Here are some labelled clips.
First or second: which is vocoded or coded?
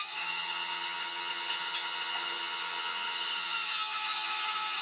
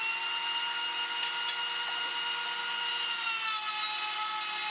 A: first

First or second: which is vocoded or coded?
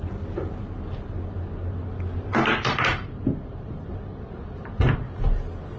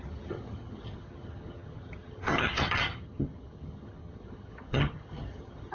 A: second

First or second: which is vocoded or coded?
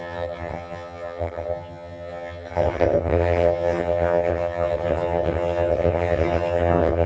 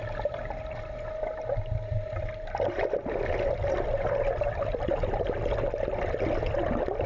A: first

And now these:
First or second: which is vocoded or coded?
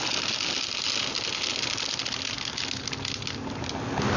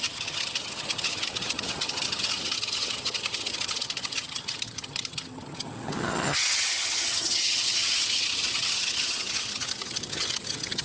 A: second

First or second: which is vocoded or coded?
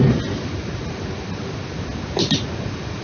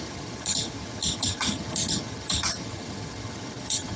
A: second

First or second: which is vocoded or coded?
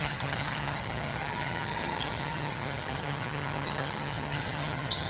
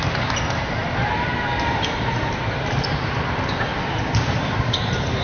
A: first